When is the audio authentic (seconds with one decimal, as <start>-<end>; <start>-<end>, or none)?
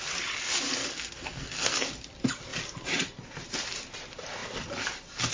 0.0-0.8; 1.9-5.3